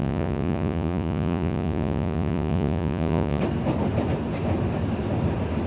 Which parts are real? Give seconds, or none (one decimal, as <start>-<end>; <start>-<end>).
3.4-5.7